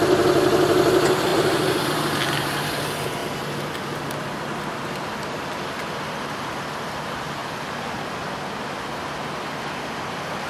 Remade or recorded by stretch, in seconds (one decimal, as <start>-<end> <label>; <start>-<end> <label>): 0.0-10.5 recorded